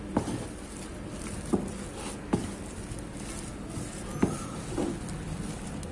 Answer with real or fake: real